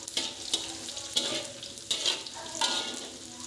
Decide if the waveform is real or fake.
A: real